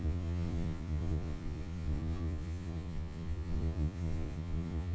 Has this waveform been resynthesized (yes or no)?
yes